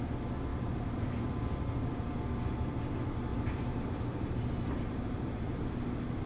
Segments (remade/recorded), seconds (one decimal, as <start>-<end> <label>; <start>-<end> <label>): 0.0-0.5 recorded; 0.5-1.3 remade; 1.3-3.3 recorded; 3.3-5.6 remade; 5.6-6.3 recorded